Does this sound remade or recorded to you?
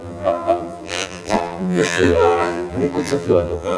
remade